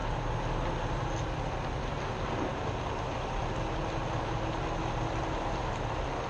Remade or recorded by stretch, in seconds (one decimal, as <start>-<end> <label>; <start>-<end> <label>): 0.0-6.3 recorded